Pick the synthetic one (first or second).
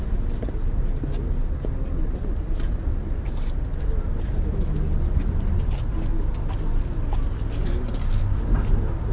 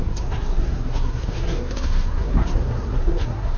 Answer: second